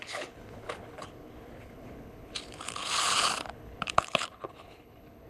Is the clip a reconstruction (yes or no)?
yes